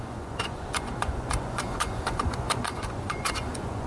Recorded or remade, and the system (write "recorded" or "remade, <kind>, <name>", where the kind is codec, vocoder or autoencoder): remade, vocoder, Vocos